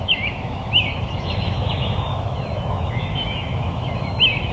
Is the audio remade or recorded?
remade